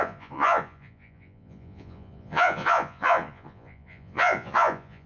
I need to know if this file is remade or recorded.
remade